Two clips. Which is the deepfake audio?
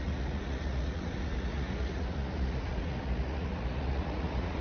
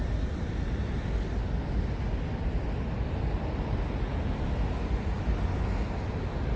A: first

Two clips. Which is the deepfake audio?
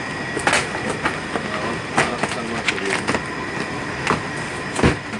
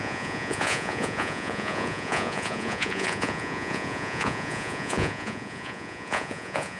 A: second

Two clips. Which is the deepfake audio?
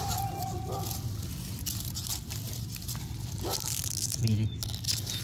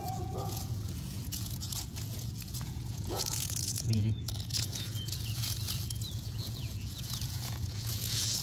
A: second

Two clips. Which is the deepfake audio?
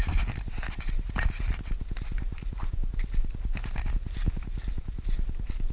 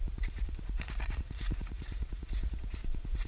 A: second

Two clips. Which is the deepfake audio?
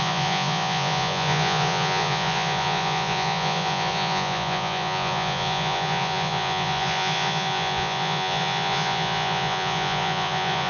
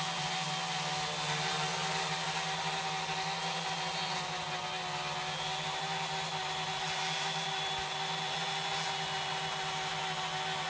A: first